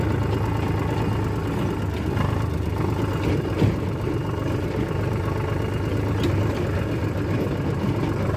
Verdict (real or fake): real